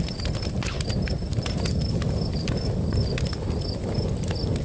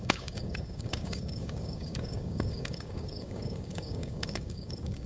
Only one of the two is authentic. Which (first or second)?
first